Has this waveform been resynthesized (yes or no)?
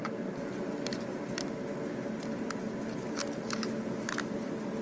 no